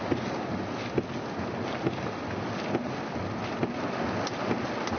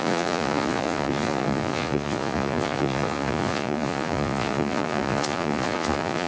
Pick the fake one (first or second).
second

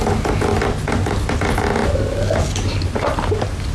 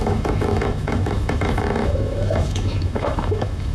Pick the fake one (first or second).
second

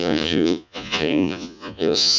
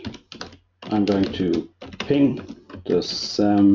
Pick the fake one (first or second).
first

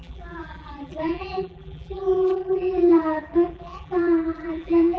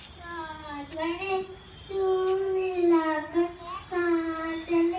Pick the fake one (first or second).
first